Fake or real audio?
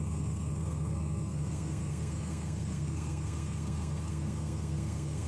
fake